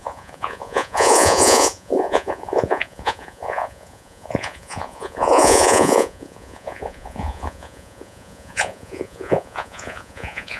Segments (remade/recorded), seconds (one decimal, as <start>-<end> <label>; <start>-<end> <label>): 0.0-10.6 remade